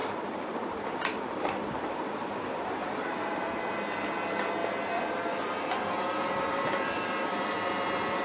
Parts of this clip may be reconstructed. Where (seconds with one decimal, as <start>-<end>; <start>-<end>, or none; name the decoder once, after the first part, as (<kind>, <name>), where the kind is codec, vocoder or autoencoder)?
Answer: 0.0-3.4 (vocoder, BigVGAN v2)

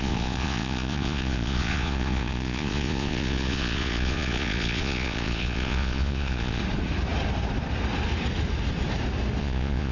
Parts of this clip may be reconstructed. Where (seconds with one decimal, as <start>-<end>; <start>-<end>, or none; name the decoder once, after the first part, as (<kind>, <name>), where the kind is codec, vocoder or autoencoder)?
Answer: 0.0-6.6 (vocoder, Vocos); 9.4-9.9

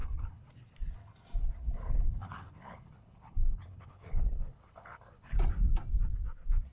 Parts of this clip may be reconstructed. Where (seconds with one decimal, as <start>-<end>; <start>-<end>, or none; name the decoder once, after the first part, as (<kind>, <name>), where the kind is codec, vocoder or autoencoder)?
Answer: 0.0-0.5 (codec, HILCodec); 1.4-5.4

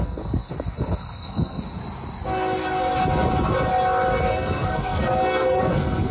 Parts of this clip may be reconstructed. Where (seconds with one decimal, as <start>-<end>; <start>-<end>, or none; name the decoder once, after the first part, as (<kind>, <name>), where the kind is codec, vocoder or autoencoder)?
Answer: 0.0-1.8 (codec, SNAC); 4.3-6.1

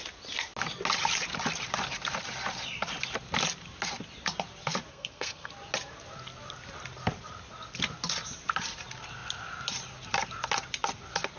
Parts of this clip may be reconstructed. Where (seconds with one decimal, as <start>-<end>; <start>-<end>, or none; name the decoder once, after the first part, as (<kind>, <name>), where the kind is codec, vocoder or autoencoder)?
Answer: 4.9-5.5 (codec, SNAC)

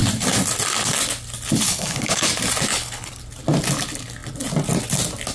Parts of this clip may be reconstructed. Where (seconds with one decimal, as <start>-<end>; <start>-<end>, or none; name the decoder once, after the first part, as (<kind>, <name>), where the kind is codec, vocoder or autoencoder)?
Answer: 1.7-2.3 (codec, HILCodec); 2.7-3.2

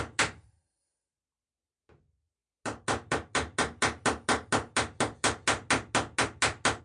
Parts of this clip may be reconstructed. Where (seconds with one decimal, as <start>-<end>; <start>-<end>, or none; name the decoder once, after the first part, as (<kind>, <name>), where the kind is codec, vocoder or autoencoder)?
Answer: none

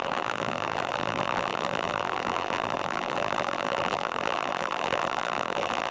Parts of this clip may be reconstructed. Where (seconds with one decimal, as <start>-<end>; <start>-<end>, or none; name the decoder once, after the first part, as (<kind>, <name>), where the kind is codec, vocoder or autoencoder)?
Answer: 0.0-5.9 (vocoder, BigVGAN v2)